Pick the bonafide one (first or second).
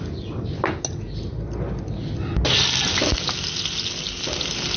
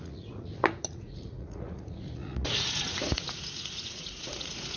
first